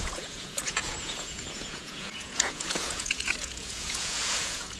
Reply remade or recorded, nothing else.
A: remade